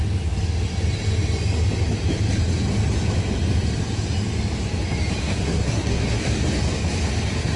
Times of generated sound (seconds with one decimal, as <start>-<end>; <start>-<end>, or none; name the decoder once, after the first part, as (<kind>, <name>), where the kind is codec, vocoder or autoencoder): 5.2-6.2 (codec, SNAC)